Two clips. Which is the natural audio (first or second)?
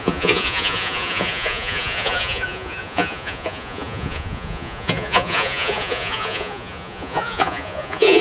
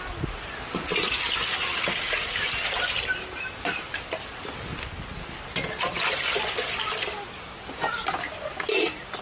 second